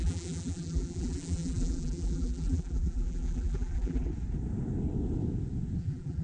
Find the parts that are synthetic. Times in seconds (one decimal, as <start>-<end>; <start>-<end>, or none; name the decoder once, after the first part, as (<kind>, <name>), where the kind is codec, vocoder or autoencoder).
0.0-4.1 (vocoder, BigVGAN v2); 5.8-6.2